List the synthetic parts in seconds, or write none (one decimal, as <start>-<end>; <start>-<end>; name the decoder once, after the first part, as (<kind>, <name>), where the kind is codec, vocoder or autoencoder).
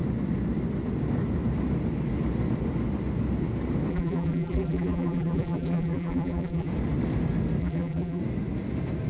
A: 3.9-6.7 (vocoder, BigVGAN v2); 7.6-8.2